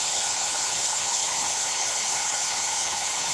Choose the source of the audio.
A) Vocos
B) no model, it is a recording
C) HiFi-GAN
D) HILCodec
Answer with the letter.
D